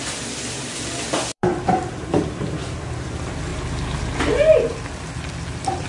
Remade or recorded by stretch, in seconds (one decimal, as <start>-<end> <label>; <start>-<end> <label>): 0.0-3.5 remade; 3.5-4.6 recorded; 4.6-5.9 remade